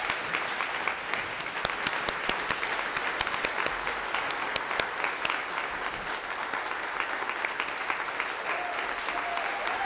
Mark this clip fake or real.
real